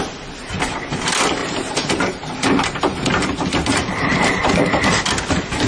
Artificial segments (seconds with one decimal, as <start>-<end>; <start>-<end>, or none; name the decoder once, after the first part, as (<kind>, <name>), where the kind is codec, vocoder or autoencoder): 1.4-4.8 (vocoder, BigVGAN v2)